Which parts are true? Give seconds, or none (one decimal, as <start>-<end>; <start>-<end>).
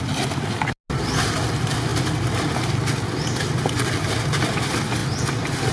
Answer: 0.0-5.7